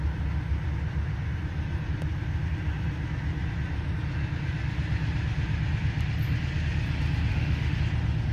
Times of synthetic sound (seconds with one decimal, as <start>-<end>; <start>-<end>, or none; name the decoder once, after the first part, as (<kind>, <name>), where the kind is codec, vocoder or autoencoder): 7.3-7.8 (autoencoder, DAC-VAE)

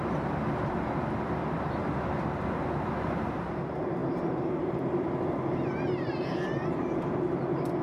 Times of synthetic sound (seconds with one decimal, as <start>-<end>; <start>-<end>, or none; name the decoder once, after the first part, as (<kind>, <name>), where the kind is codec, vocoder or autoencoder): none

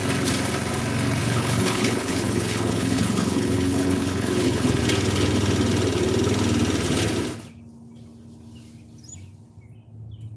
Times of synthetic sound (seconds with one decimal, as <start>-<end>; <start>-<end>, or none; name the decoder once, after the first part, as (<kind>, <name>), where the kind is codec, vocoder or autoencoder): 1.2-4.8 (codec, HILCodec)

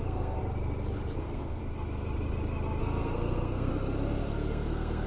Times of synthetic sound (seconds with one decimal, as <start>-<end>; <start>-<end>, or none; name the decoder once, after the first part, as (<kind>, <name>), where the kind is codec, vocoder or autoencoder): 0.0-0.4 (codec, SNAC); 1.2-1.6; 2.8-3.7; 4.2-5.1

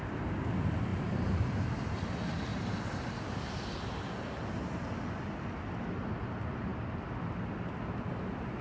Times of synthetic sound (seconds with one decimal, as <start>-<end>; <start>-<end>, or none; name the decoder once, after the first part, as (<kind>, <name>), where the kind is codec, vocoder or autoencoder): 2.5-3.3 (vocoder, BigVGAN v2)

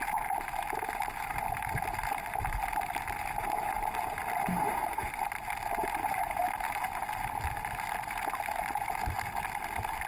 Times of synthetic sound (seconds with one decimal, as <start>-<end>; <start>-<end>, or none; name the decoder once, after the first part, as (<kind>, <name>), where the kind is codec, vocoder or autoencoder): 4.5-5.1 (autoencoder, DAC-VAE)

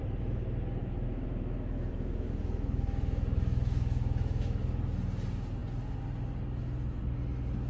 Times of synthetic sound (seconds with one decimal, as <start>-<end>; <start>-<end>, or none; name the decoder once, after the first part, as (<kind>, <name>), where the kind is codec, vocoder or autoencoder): 0.8-4.6 (autoencoder, DAC-VAE)

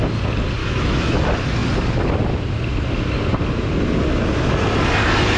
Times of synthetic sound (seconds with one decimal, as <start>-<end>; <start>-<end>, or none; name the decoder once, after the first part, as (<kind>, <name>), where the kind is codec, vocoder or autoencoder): 0.6-1.2 (autoencoder, DAC-VAE)